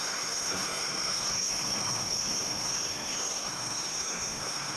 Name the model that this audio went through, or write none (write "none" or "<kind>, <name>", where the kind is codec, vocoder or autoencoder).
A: codec, SNAC